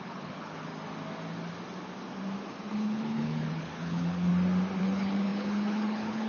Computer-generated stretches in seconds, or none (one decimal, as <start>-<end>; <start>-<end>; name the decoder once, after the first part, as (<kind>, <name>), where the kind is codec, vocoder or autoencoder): 0.0-0.7 (codec, HILCodec); 2.7-4.3; 4.8-6.3

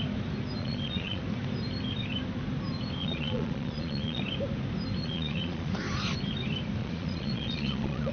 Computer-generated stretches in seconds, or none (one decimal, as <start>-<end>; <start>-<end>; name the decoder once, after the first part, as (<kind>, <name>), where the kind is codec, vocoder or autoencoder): 0.6-1.2 (vocoder, Vocos); 3.0-4.2; 5.0-5.7; 6.8-8.1